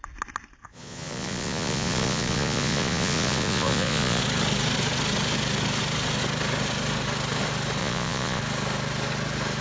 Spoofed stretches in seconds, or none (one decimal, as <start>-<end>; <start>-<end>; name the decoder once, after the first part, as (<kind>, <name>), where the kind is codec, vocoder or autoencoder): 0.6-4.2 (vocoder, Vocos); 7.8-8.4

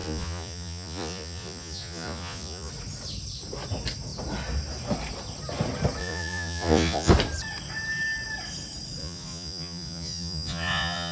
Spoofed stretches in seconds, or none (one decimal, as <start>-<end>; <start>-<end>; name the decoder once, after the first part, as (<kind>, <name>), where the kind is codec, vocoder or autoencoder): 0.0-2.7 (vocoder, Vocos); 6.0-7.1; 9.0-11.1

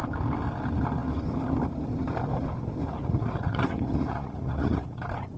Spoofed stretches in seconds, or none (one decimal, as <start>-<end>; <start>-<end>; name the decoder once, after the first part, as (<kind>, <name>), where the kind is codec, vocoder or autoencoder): 3.0-5.0 (vocoder, Vocos)

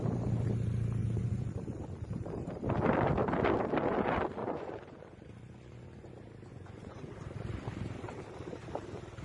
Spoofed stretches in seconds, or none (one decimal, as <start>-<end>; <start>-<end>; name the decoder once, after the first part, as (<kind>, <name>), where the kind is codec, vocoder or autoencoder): 1.0-1.5 (vocoder, Vocos); 4.4-6.1; 6.5-7.1

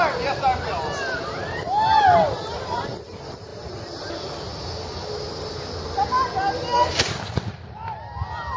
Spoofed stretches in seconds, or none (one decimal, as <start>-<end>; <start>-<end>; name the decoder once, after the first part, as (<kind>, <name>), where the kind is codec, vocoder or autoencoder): none